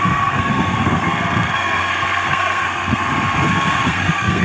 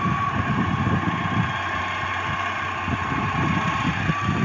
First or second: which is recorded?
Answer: second